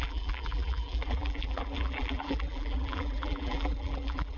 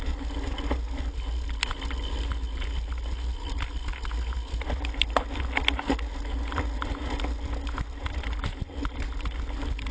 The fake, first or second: first